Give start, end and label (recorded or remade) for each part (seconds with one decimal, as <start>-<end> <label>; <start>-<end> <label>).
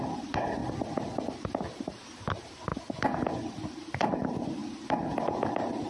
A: 0.0-0.6 remade; 0.6-1.8 recorded; 1.8-2.7 remade; 2.7-3.3 recorded; 3.3-4.6 remade; 4.6-5.2 recorded; 5.2-5.9 remade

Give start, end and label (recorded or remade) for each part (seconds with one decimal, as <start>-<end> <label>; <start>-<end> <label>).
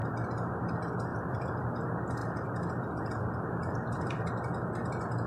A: 0.0-0.7 remade; 0.7-1.1 recorded; 1.1-1.7 remade; 1.7-2.2 recorded; 2.2-4.3 remade; 4.3-5.3 recorded